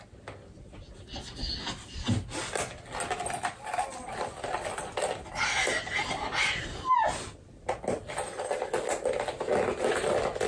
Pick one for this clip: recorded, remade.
recorded